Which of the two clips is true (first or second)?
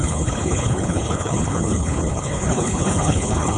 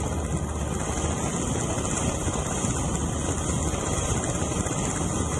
second